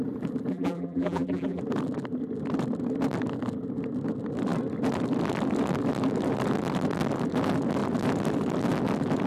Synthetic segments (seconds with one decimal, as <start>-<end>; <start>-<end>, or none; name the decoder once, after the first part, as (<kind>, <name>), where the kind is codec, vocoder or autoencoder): 0.5-1.6 (vocoder, BigVGAN v2)